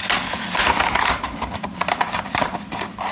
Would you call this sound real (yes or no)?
yes